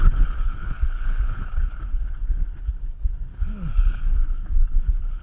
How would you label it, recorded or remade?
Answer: remade